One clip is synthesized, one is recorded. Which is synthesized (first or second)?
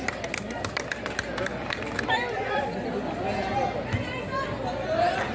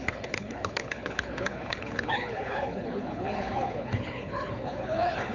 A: second